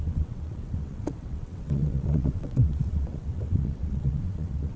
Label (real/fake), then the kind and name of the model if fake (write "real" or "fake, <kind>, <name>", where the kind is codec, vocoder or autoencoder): fake, vocoder, WaveNeXt